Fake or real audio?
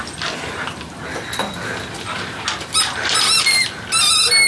real